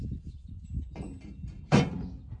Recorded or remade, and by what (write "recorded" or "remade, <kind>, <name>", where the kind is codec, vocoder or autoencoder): recorded